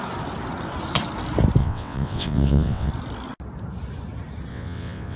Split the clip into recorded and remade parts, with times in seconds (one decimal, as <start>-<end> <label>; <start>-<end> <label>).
0.0-1.6 recorded; 1.6-2.9 remade; 2.9-4.5 recorded; 4.5-5.2 remade